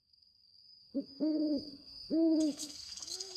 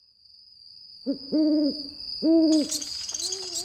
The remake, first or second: first